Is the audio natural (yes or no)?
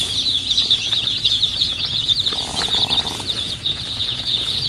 no